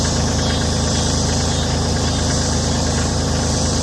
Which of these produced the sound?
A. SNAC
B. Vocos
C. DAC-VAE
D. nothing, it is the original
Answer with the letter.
D